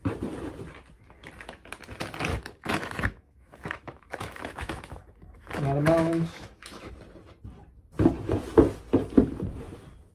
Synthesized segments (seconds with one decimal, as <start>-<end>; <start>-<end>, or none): 2.3-6.9

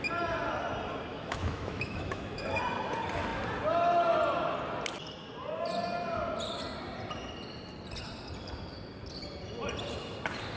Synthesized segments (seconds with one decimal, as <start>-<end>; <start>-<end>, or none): 1.1-2.6